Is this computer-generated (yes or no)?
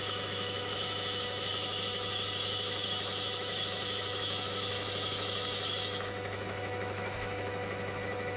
yes